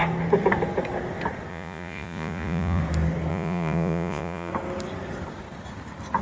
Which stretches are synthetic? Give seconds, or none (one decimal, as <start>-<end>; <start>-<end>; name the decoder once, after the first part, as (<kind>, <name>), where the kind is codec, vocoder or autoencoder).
1.5-2.8 (vocoder, Vocos); 3.3-4.5